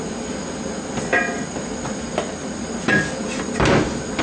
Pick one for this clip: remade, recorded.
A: recorded